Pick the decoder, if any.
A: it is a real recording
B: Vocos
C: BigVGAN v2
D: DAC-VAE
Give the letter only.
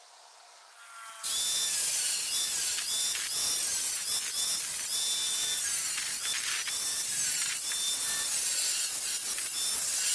A